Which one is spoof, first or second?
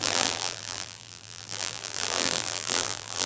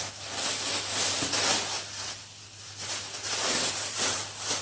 first